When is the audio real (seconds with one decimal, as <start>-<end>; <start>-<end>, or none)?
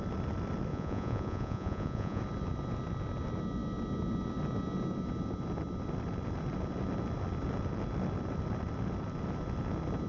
0.0-0.7; 2.2-10.1